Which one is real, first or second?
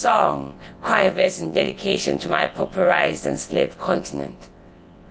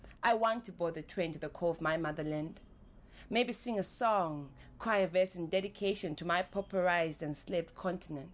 second